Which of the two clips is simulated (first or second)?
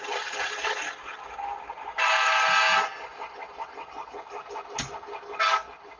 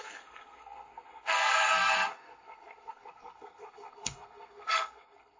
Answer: second